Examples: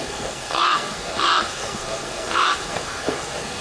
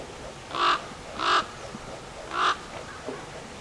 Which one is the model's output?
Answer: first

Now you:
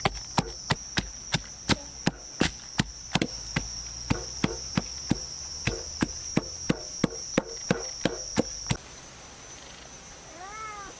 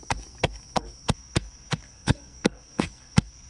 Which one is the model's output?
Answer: second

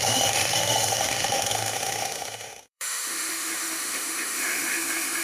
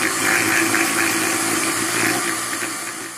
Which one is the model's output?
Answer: first